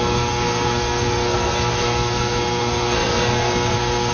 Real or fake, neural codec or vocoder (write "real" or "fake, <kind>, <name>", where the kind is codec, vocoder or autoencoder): fake, codec, SNAC